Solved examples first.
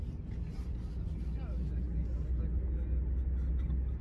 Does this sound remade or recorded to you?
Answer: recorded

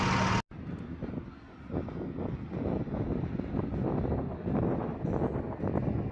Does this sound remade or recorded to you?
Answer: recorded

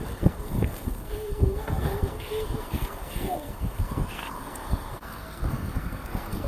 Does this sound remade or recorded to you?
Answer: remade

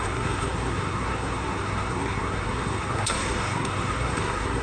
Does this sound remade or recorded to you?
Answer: remade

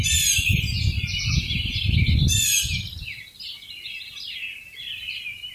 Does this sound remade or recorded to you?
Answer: recorded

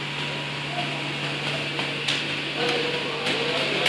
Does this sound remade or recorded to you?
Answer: recorded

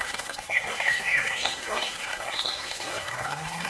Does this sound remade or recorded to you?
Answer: remade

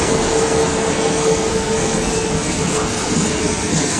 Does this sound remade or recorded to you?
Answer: remade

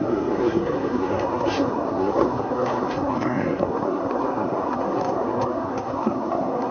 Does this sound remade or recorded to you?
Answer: remade